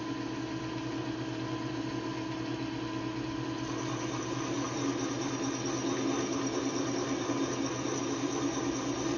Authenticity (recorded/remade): recorded